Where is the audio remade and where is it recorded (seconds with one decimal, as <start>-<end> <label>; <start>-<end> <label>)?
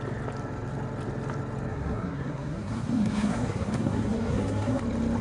0.0-1.7 recorded; 1.7-4.8 remade; 4.8-5.2 recorded